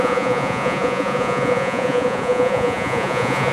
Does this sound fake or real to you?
fake